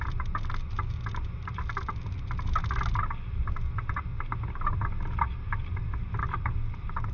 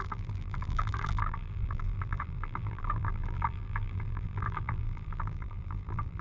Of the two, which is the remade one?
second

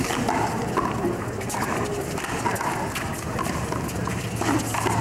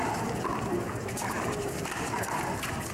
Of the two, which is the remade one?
second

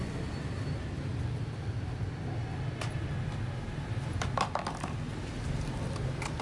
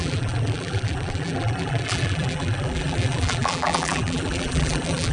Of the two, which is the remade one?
second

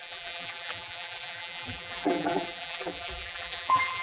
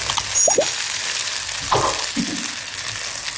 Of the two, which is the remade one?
first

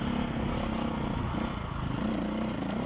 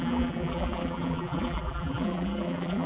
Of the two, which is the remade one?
second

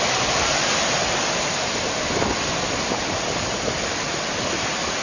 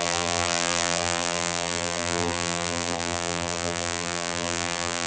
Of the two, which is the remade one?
second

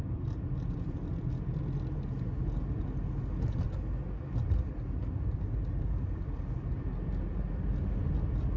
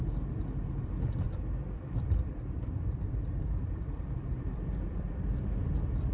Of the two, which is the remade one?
second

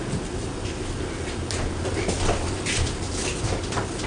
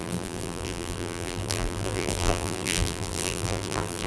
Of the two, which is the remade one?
second